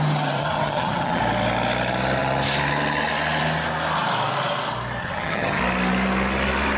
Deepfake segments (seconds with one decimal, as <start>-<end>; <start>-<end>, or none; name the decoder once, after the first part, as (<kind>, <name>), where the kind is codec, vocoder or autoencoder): 0.4-1.2 (vocoder, HiFi-GAN); 5.0-5.6